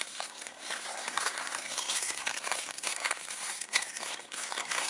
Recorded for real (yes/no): no